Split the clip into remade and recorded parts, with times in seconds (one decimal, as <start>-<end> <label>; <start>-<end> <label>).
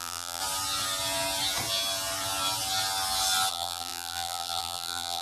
0.0-0.4 remade; 0.4-3.5 recorded; 3.5-5.2 remade